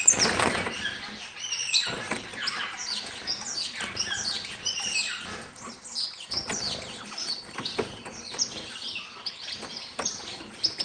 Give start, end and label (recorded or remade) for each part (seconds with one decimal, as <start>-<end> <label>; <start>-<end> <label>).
0.0-10.8 recorded